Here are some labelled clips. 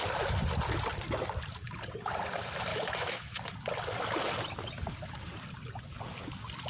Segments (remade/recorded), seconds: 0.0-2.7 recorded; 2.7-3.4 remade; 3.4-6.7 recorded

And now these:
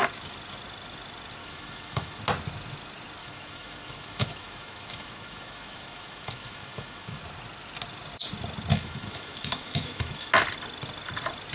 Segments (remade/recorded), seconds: 0.0-1.4 recorded; 1.4-2.2 remade; 2.2-3.2 recorded; 3.2-7.2 remade; 7.2-8.7 recorded; 8.7-10.3 remade; 10.3-11.5 recorded

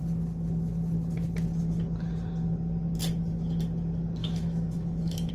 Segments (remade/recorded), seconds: 0.0-4.2 recorded; 4.2-5.3 remade

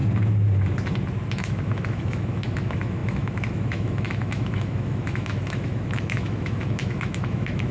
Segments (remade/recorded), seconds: 0.0-1.3 recorded; 1.3-7.7 remade

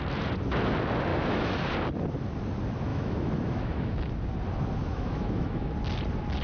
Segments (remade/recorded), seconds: 0.0-1.1 recorded; 1.1-1.6 remade; 1.6-2.9 recorded; 2.9-4.1 remade; 4.1-4.8 recorded; 4.8-5.7 remade; 5.7-6.4 recorded

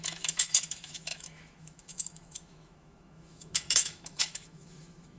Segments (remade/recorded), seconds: 0.0-5.2 remade

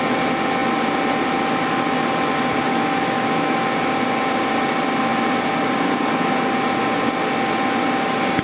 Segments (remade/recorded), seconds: 0.0-2.7 recorded; 2.7-3.6 remade; 3.6-8.4 recorded

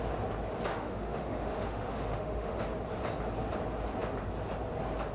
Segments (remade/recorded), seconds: 0.0-0.7 recorded; 0.7-2.6 remade; 2.6-5.1 recorded